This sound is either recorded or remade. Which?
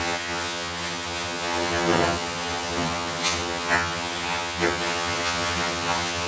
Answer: remade